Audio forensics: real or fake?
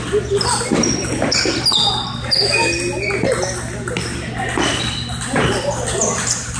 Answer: real